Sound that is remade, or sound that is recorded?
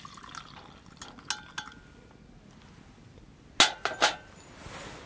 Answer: recorded